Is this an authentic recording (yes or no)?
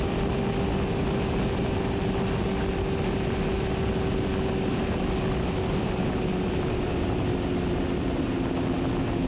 yes